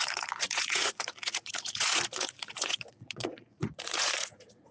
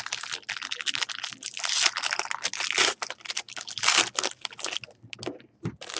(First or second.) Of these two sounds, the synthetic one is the first